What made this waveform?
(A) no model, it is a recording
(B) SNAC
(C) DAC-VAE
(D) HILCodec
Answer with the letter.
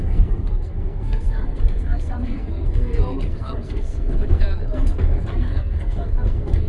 B